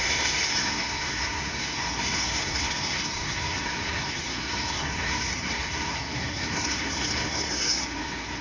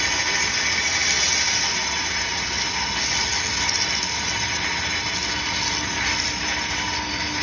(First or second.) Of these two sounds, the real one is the second